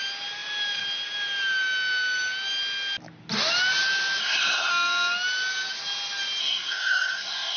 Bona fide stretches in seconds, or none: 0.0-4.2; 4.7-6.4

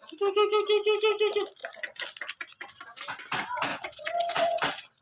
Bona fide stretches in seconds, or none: 0.0-3.7

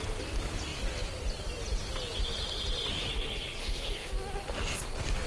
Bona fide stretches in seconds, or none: 0.0-3.6; 4.1-5.3

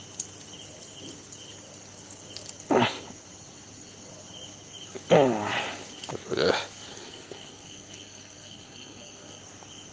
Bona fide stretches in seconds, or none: 0.0-6.9; 9.4-9.9